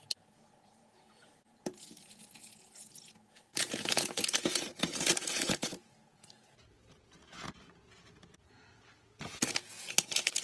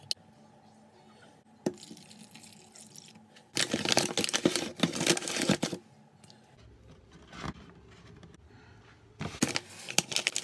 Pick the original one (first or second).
second